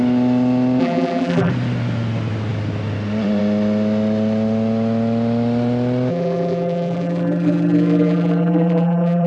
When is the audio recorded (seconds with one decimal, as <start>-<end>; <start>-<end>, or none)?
0.0-0.8; 1.5-6.1